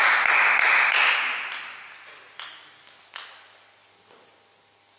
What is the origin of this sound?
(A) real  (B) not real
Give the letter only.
A